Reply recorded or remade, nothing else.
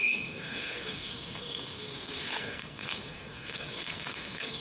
remade